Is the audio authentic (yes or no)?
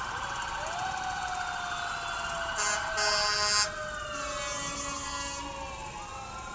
yes